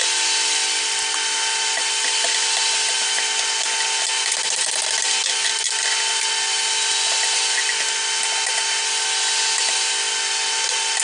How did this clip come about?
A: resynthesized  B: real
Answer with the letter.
B